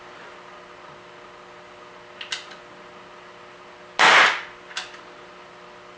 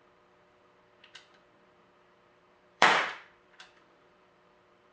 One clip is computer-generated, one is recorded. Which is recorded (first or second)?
first